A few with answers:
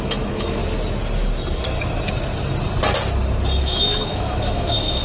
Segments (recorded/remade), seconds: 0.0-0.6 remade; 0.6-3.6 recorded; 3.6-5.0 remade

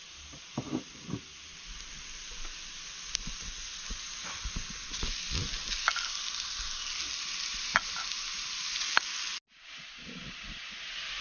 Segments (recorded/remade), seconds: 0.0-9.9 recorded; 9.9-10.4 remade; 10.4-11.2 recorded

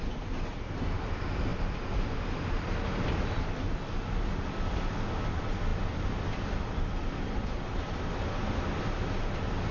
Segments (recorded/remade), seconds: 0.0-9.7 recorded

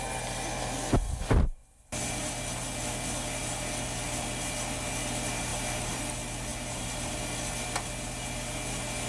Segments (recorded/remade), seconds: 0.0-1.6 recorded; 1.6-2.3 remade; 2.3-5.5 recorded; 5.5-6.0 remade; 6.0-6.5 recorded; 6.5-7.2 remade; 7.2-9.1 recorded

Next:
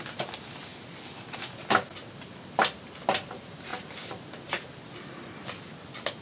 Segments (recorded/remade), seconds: 0.0-6.2 recorded

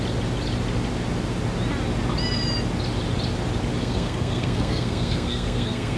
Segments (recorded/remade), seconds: 0.0-3.8 recorded; 3.8-6.0 remade